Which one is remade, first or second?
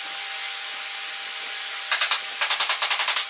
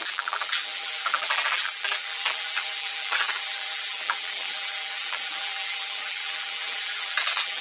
second